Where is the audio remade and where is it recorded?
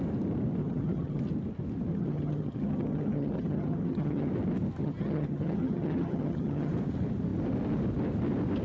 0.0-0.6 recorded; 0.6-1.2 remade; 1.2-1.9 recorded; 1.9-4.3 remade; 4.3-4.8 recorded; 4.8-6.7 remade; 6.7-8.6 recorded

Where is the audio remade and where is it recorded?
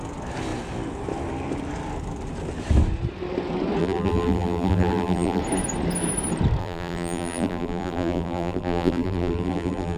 0.0-3.8 recorded; 3.8-5.4 remade; 5.4-6.6 recorded; 6.6-10.0 remade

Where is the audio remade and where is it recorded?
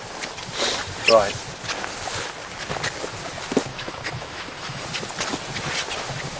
0.0-3.7 recorded; 3.7-4.8 remade; 4.8-6.4 recorded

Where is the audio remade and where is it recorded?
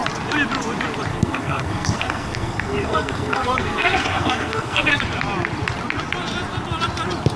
0.0-1.1 recorded; 1.1-5.0 remade; 5.0-7.4 recorded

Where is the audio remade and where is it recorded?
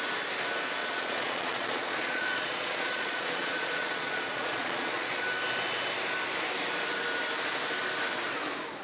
0.0-0.8 recorded; 0.8-5.2 remade; 5.2-8.8 recorded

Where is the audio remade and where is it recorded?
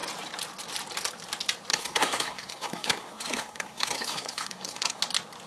0.0-1.7 recorded; 1.7-5.0 remade; 5.0-5.5 recorded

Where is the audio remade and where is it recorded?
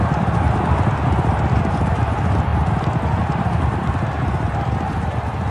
0.0-5.5 recorded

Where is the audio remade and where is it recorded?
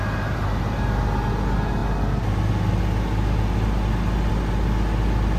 0.0-5.4 recorded